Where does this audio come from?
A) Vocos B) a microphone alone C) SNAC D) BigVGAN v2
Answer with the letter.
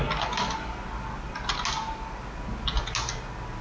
B